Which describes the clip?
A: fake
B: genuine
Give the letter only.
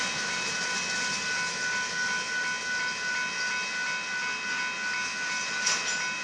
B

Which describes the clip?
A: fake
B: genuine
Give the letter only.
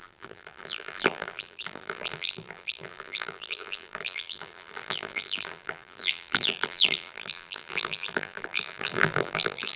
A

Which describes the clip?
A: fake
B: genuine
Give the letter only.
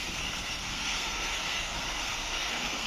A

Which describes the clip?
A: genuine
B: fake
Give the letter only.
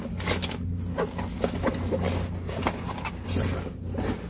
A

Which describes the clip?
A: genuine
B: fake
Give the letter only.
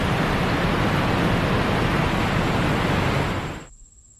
A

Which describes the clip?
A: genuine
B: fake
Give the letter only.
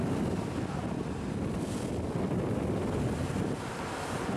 A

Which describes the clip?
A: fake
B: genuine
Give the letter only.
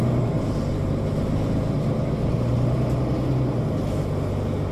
B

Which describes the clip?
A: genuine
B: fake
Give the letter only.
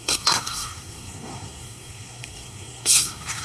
B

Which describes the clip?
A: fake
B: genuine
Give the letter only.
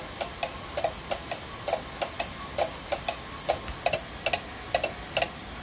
B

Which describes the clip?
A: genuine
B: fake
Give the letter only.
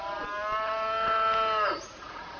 A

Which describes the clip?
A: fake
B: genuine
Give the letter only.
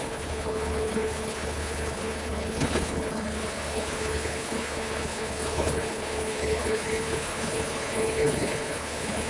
A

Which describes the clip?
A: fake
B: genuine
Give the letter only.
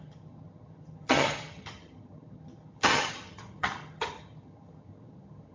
A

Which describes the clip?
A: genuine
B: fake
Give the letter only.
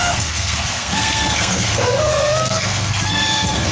B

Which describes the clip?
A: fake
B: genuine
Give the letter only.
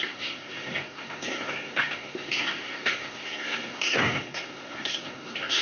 A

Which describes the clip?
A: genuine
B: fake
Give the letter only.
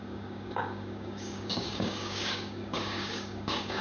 B